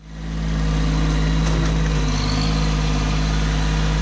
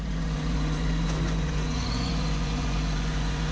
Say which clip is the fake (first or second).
second